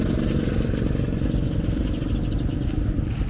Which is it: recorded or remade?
recorded